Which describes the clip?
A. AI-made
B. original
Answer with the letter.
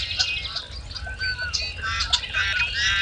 B